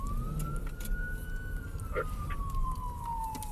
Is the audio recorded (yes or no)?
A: no